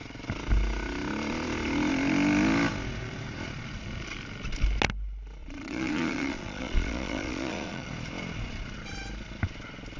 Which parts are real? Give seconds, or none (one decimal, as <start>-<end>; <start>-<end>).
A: 0.0-5.4; 7.9-10.0